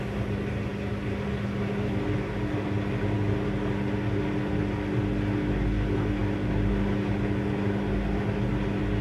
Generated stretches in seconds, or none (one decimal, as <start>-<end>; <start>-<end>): none